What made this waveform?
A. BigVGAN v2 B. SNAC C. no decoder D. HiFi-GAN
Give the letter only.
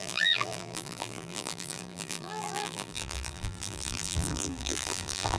A